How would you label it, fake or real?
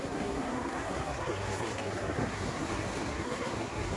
fake